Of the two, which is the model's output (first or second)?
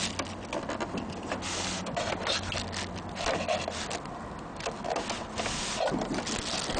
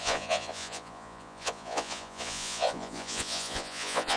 second